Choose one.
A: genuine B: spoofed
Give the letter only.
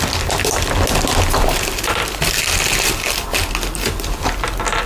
A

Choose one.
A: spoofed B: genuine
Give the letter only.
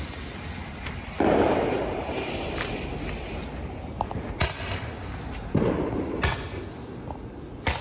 B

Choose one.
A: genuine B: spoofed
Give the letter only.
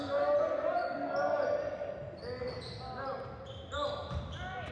A